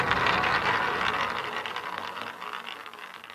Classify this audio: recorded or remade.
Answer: recorded